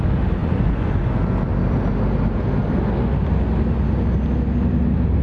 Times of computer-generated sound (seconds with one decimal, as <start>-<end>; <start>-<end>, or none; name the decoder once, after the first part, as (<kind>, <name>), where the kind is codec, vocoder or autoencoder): 0.4-1.1 (vocoder, Vocos)